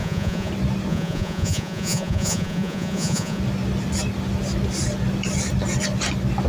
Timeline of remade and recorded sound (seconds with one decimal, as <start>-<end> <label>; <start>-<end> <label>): 0.0-0.5 remade; 0.5-0.9 recorded; 0.9-3.4 remade; 3.4-6.5 recorded